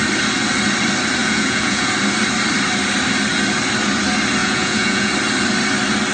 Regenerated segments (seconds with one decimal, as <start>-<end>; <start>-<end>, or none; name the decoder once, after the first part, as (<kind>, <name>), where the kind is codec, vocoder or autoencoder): 1.2-1.9 (vocoder, Vocos); 4.4-5.1